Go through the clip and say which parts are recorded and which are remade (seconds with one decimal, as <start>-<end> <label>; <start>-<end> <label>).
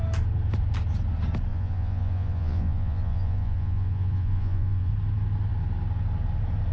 0.0-1.5 recorded; 1.5-4.9 remade; 4.9-6.7 recorded